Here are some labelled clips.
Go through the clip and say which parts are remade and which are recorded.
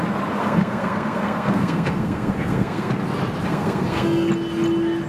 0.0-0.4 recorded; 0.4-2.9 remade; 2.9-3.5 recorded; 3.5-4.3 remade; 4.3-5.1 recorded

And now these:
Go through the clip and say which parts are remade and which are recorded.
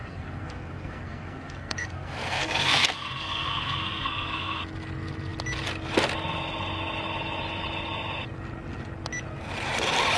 0.0-4.6 remade; 4.6-10.2 recorded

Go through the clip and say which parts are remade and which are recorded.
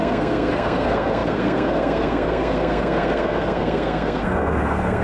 0.0-5.0 remade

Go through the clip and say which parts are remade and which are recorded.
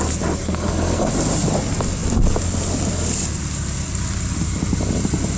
0.0-0.4 recorded; 0.4-1.1 remade; 1.1-5.4 recorded